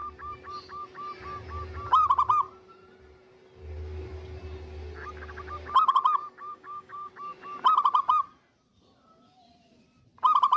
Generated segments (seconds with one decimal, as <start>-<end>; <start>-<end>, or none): 6.5-7.1